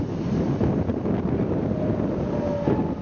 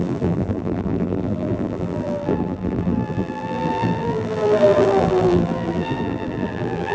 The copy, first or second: second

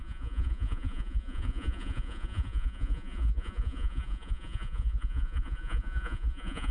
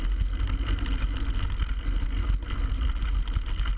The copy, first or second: first